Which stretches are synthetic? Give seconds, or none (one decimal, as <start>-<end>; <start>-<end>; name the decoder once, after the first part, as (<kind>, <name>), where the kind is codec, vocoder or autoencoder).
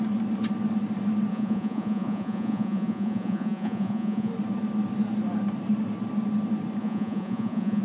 1.3-4.3 (vocoder, Vocos); 6.8-7.8